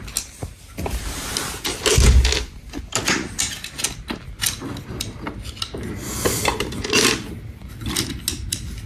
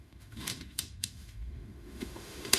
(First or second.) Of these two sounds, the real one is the first